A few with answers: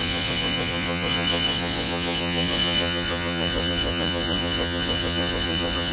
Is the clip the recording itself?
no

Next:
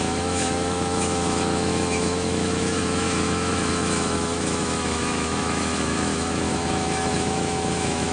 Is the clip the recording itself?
no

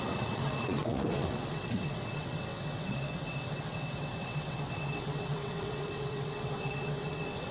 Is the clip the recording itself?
no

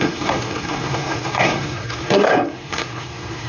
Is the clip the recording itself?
no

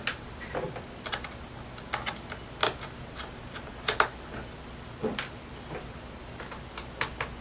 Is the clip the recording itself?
yes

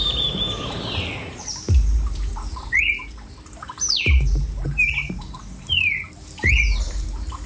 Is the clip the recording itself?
no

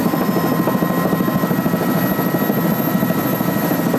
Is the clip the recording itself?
yes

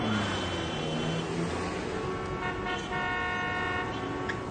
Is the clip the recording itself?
yes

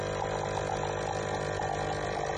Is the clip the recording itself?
yes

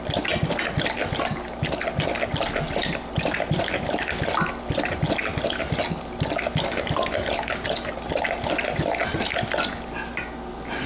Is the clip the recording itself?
yes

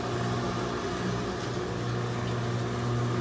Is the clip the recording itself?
yes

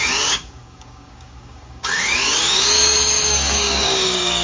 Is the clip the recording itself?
no